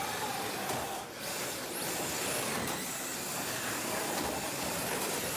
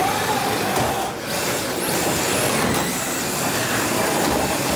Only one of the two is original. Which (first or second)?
second